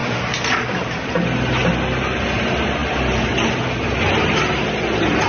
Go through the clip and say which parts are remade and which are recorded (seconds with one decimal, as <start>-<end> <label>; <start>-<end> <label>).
0.0-1.1 remade; 1.1-2.8 recorded; 2.8-3.5 remade; 3.5-5.3 recorded